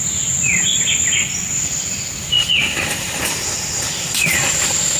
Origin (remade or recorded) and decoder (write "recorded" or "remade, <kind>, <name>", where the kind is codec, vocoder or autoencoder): recorded